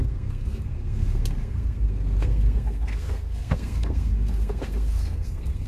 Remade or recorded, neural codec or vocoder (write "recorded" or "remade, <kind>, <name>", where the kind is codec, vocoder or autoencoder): remade, codec, SNAC